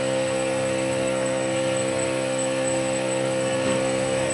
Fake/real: fake